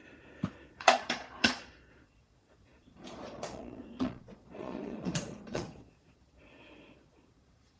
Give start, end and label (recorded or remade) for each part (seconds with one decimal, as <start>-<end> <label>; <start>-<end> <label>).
0.0-0.7 recorded; 0.7-7.8 remade